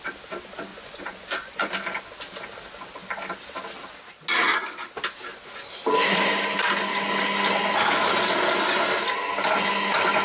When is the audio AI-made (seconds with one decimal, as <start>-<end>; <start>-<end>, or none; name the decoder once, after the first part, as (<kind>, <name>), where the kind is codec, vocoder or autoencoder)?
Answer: 0.7-1.7 (vocoder, Vocos)